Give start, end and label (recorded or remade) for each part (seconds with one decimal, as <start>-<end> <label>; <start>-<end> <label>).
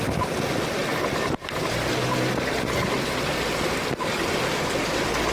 0.0-5.3 recorded